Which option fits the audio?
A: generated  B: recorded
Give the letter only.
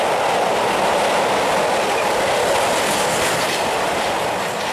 B